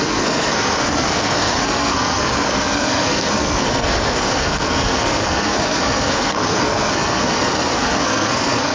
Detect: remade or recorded remade